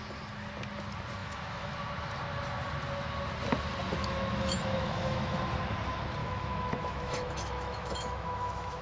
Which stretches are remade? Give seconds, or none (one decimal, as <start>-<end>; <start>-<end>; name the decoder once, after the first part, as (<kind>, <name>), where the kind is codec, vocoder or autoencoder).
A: 1.2-1.7 (autoencoder, DAC-VAE); 4.0-5.4; 6.2-8.8